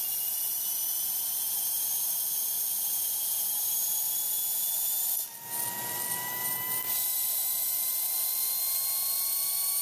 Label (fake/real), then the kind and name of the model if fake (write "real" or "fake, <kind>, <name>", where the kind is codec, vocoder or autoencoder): real